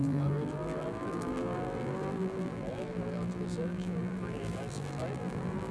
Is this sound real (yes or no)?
no